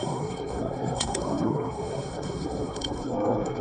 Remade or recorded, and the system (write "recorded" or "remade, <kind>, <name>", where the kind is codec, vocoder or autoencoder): remade, codec, SNAC